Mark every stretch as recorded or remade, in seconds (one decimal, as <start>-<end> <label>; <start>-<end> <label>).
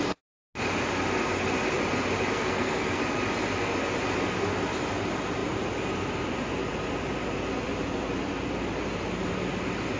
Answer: 0.0-2.3 recorded; 2.3-3.0 remade; 3.0-10.0 recorded